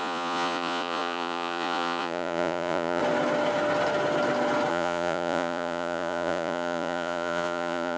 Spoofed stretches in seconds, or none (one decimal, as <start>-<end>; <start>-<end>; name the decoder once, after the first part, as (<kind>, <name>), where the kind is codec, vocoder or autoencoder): 0.0-3.0 (vocoder, Vocos); 4.7-8.0